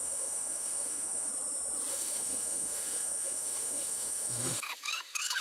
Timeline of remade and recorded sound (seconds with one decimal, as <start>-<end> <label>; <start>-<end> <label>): 0.0-1.3 remade; 1.3-1.9 recorded; 1.9-5.4 remade